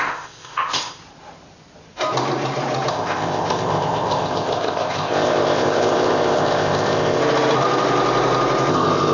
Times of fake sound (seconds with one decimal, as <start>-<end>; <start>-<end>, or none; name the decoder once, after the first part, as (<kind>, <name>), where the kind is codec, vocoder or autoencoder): 0.0-1.0 (codec, ZipCodec); 2.9-7.2; 8.7-9.1